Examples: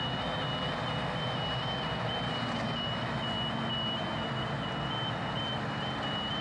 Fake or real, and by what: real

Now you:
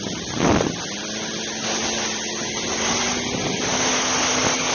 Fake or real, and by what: real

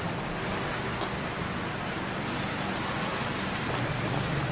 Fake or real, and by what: real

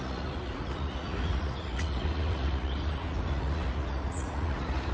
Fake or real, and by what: fake, vocoder, Vocos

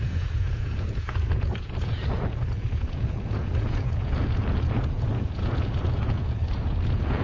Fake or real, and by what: fake, vocoder, Vocos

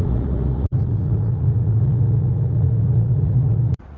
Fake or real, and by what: fake, vocoder, Vocos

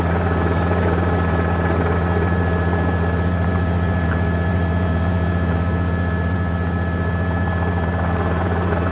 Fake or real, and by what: real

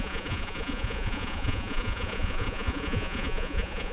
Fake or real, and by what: fake, vocoder, Vocos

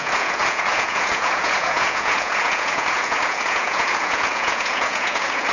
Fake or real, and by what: fake, vocoder, Vocos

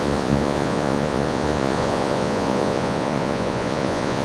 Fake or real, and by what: fake, vocoder, Vocos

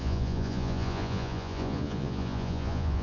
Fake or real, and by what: fake, vocoder, Vocos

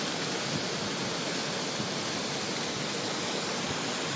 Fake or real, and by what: real